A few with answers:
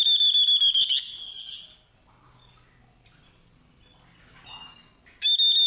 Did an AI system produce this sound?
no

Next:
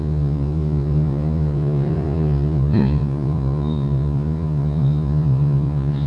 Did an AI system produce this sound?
yes